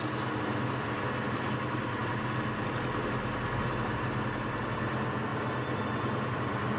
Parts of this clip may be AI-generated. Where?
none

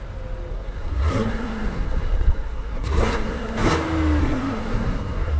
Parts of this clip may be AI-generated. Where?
0.5-3.7 (codec, SNAC); 4.2-5.4